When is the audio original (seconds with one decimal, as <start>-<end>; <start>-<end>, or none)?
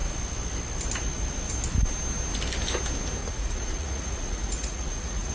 0.0-3.2